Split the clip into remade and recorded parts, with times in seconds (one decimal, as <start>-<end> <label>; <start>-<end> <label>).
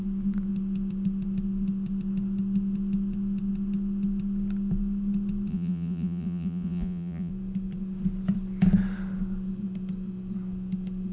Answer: 0.0-5.5 recorded; 5.5-7.3 remade; 7.3-11.1 recorded